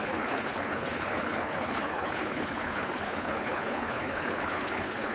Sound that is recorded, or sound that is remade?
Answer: remade